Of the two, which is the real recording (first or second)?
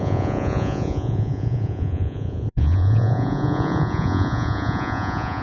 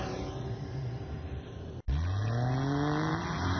second